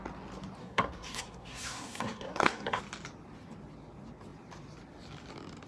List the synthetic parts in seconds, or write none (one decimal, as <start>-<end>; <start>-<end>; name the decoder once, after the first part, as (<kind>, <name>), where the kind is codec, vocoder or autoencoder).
0.6-2.8 (codec, SNAC)